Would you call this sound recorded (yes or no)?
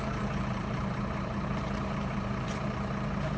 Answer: no